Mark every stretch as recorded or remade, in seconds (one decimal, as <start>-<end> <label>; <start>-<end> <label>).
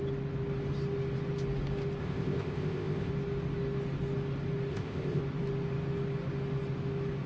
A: 0.0-2.0 recorded; 2.0-3.1 remade; 3.1-4.7 recorded; 4.7-5.2 remade; 5.2-7.3 recorded